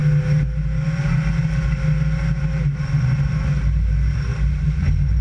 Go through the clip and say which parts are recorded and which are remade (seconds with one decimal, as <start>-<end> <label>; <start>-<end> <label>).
0.0-4.3 recorded; 4.3-5.2 remade